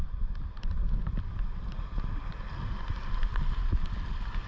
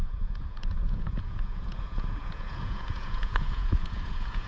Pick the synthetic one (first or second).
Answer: second